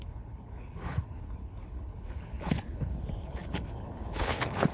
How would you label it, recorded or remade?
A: remade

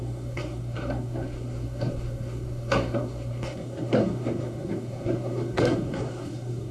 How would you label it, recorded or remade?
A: remade